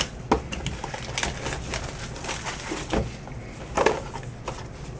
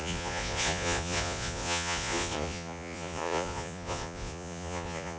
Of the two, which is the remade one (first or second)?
second